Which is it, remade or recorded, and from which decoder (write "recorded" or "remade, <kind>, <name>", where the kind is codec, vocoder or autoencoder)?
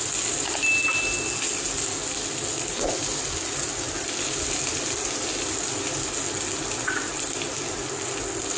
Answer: recorded